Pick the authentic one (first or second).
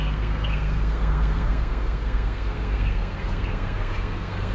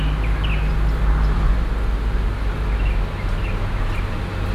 second